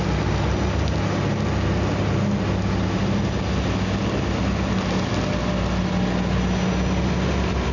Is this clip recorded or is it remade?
recorded